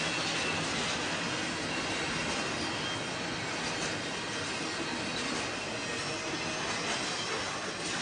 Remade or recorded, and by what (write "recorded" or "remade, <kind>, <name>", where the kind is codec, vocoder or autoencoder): recorded